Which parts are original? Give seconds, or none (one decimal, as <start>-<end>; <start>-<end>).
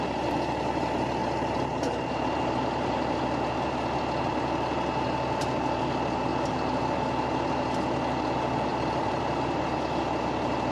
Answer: 0.0-1.2; 3.2-6.3; 6.8-8.7; 9.2-10.7